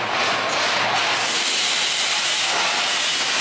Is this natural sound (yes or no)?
yes